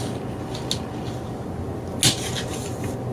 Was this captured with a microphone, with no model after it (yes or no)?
yes